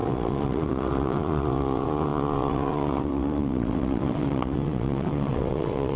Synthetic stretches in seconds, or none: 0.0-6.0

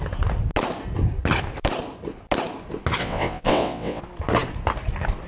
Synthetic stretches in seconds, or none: 3.0-4.0

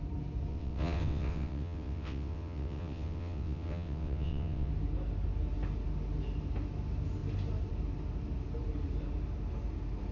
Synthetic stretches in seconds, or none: 0.5-4.7

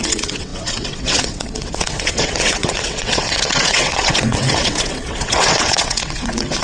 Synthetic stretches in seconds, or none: 0.0-6.6

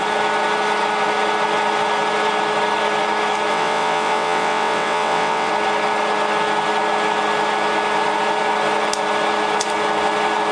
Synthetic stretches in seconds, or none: 3.5-5.5

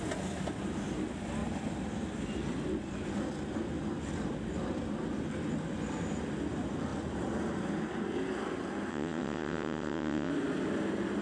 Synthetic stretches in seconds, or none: 8.9-10.3